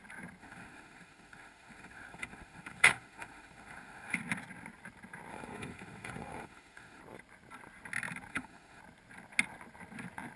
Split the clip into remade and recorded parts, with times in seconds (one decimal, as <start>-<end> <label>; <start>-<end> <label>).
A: 0.0-0.4 recorded; 0.4-4.2 remade; 4.2-5.3 recorded; 5.3-7.0 remade; 7.0-8.3 recorded; 8.3-8.8 remade; 8.8-10.4 recorded